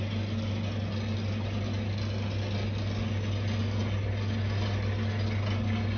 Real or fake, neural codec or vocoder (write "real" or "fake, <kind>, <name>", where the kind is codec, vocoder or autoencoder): real